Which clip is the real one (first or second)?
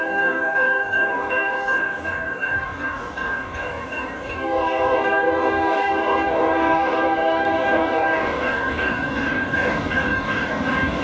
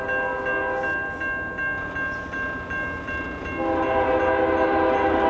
second